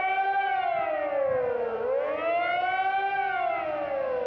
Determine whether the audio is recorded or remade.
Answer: recorded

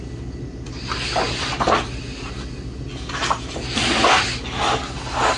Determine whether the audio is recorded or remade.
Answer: recorded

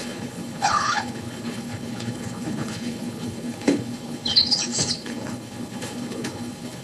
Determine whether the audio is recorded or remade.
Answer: remade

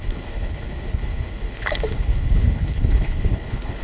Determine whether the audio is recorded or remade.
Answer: remade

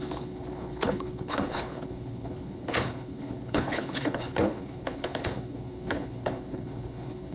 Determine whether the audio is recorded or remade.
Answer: remade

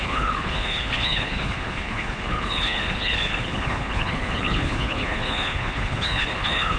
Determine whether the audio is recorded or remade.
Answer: remade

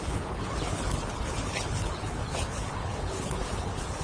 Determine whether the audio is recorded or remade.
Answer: remade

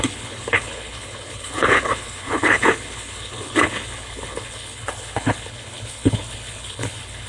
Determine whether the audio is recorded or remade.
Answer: remade